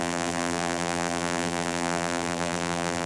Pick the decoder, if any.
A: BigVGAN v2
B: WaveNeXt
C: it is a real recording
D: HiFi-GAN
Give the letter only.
A